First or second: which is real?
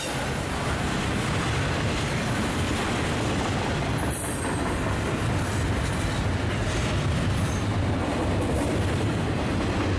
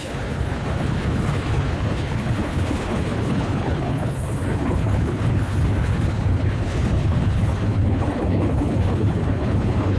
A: first